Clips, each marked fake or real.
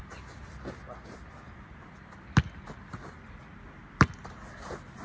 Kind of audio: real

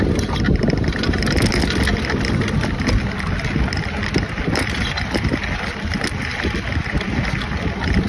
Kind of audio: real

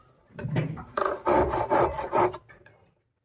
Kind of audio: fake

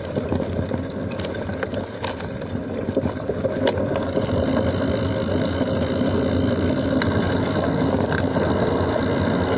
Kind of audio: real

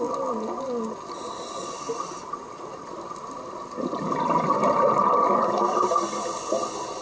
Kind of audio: real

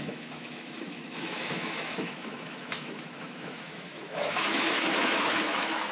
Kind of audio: fake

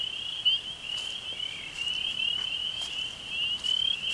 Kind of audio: real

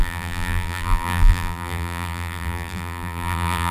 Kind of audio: fake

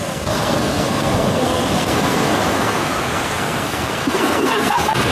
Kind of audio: fake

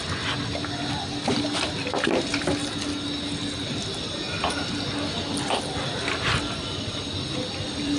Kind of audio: real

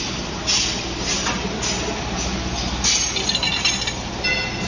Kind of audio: real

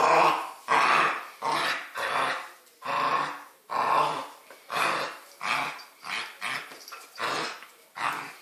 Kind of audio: real